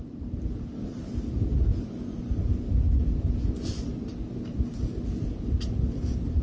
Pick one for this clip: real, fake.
real